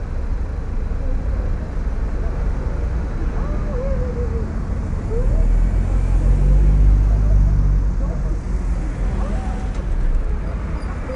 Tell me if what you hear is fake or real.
real